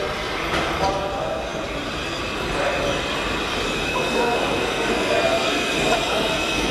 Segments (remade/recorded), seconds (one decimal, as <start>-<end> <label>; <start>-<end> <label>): 0.0-3.9 recorded; 3.9-6.7 remade